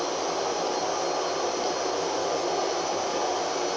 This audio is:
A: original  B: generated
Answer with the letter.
A